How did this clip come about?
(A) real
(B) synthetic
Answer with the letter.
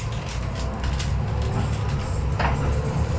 A